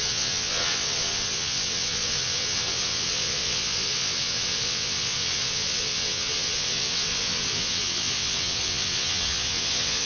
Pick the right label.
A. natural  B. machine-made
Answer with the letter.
B